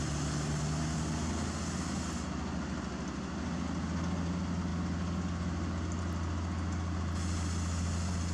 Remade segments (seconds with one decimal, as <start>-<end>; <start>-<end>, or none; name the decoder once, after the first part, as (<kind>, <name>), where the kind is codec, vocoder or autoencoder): none